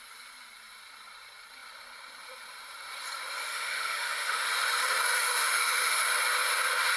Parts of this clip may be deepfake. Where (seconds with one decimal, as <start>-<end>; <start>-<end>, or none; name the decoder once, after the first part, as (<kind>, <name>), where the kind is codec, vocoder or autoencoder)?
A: 3.5-4.5 (autoencoder, DAC-VAE); 5.2-6.0